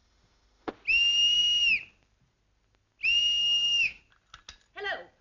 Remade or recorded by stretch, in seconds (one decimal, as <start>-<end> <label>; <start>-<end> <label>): 0.0-0.7 remade; 0.7-3.4 recorded; 3.4-4.0 remade; 4.0-5.2 recorded